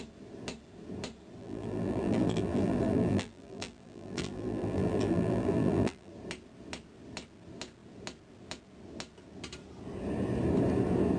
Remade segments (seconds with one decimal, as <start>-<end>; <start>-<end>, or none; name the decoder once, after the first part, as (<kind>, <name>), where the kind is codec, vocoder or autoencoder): 1.4-6.1 (vocoder, BigVGAN v2)